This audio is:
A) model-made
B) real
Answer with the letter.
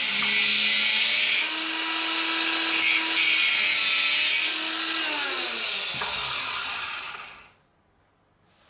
B